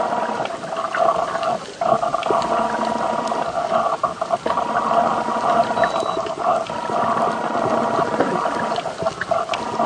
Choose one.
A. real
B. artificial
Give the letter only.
A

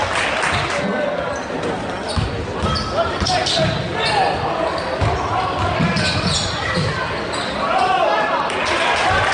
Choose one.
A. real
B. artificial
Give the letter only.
A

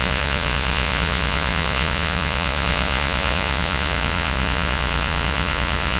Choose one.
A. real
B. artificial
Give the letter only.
B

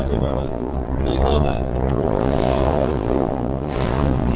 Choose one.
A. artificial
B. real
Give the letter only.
A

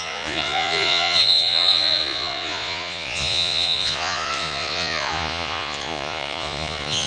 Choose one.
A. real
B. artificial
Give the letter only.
B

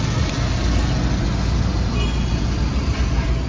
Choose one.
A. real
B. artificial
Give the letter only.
A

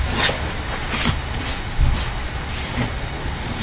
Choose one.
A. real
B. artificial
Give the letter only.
A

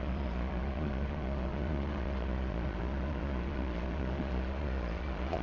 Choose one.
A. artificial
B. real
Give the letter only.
A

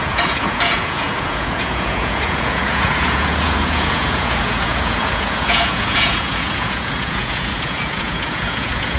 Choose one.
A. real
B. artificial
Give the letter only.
B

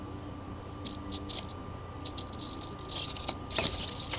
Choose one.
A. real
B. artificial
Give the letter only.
A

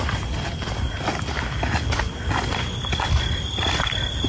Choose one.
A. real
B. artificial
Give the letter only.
A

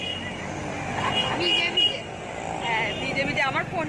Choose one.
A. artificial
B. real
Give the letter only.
B